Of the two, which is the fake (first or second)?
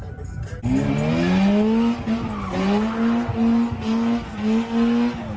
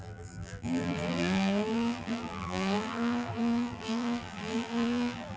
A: second